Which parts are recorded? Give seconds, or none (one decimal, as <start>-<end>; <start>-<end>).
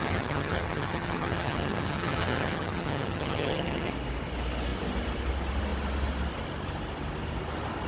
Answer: 3.9-7.9